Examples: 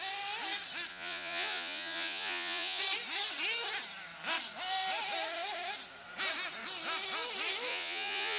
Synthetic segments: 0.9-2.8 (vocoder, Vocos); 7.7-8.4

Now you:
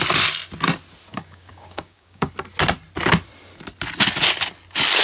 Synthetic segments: 1.1-2.3 (codec, DAC)

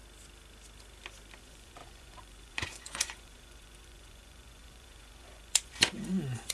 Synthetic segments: 1.4-6.5 (vocoder, Vocos)

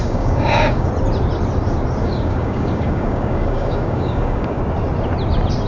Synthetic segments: 0.0-0.9 (codec, DAC); 2.0-4.6

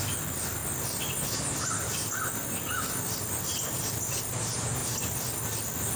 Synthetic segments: none